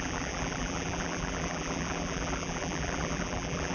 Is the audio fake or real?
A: fake